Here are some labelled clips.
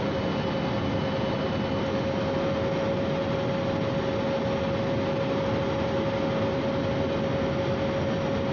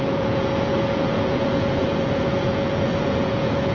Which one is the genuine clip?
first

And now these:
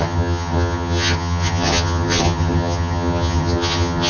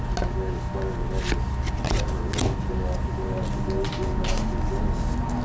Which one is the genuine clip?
second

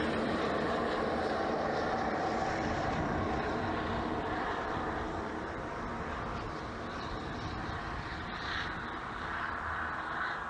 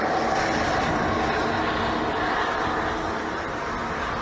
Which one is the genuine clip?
second